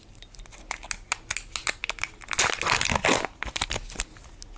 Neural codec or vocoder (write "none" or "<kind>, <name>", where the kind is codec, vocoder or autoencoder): none